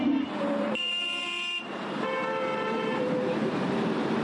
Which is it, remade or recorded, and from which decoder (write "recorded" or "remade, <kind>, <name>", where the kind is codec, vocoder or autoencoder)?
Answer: remade, vocoder, BigVGAN v2